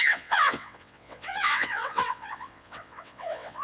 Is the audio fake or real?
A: fake